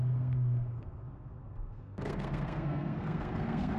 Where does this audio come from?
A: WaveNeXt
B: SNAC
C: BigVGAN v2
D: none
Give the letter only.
B